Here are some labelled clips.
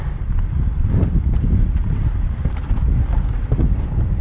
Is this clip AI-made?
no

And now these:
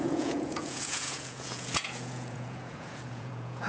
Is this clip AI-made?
yes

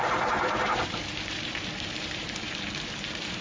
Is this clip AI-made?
yes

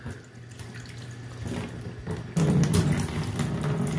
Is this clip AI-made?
no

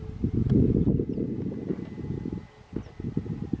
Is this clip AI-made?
no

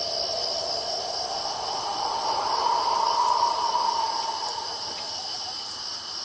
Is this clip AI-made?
no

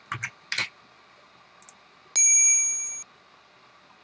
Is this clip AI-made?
no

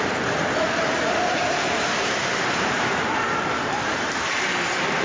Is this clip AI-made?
yes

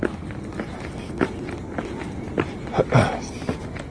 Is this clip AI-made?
no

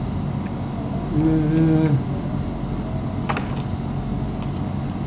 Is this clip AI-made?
no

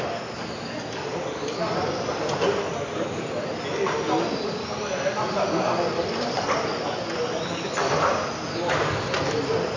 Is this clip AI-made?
no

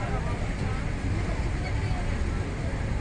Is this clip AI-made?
no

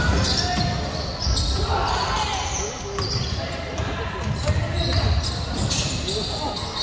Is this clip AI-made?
no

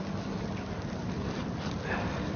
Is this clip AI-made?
no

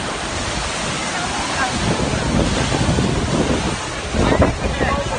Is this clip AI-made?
no